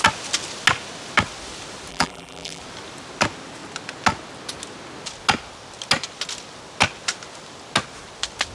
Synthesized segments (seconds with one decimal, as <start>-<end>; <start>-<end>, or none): 1.9-2.6